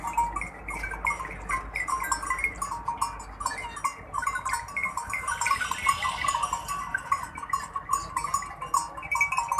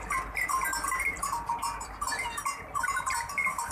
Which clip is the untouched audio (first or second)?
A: first